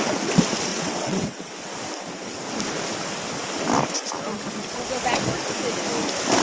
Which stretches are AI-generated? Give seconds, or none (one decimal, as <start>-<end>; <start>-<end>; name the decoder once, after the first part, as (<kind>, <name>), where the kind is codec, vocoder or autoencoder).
0.7-1.5 (vocoder, WaveNeXt)